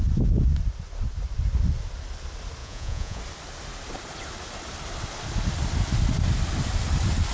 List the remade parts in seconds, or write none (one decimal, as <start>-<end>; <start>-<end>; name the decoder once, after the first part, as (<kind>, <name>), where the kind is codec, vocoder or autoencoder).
2.6-3.2 (vocoder, Vocos)